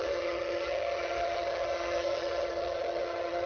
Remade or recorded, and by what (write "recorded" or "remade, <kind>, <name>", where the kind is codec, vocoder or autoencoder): remade, vocoder, HiFi-GAN